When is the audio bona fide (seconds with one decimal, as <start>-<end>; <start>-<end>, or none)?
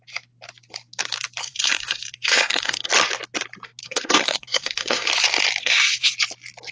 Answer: 0.0-1.4; 2.9-3.8; 5.1-5.6; 6.1-6.7